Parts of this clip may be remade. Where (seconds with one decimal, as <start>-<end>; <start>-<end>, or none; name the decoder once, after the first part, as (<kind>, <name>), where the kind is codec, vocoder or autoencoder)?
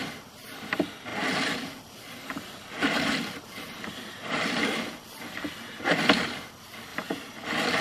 1.1-5.8 (vocoder, BigVGAN v2); 6.9-7.8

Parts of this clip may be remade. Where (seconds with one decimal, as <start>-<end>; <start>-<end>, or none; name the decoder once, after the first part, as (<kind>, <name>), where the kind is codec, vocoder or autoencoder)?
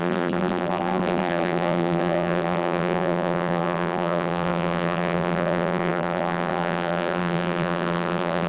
0.0-8.5 (vocoder, BigVGAN v2)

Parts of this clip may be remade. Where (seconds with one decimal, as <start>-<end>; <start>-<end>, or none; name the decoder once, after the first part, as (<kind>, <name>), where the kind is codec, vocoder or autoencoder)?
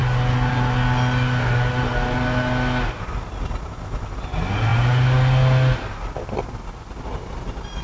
none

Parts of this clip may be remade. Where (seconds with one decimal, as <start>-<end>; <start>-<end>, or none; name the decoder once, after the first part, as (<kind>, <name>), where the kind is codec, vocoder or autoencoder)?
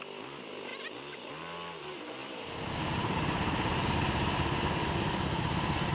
2.2-5.9 (vocoder, BigVGAN v2)